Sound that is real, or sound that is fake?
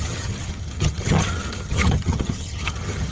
fake